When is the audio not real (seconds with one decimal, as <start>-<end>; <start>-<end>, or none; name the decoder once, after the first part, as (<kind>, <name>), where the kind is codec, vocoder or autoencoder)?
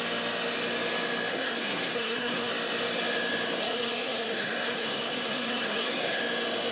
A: 1.3-2.5 (codec, SNAC); 3.6-6.2